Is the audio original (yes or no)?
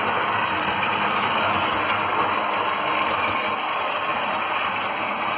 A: yes